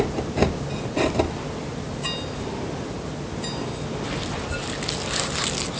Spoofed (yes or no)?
no